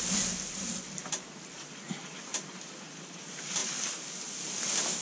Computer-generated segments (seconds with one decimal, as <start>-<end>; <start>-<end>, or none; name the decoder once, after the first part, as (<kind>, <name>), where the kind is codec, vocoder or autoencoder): none